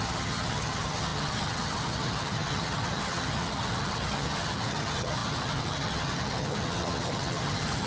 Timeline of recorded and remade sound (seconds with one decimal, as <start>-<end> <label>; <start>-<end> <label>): 0.0-7.9 remade

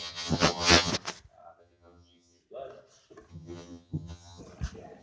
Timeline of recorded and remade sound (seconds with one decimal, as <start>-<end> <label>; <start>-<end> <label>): 0.0-0.9 remade; 0.9-1.6 recorded; 1.6-2.4 remade; 2.4-3.3 recorded; 3.3-4.4 remade; 4.4-5.0 recorded

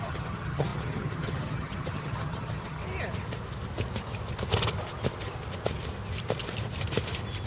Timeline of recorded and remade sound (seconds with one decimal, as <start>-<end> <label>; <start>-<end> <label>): 0.0-2.8 remade; 2.8-7.5 recorded

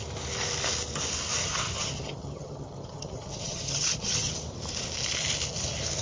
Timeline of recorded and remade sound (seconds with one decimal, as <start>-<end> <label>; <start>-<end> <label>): 0.0-1.4 recorded; 1.4-4.3 remade; 4.3-6.0 recorded